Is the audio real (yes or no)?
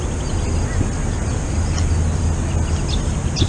yes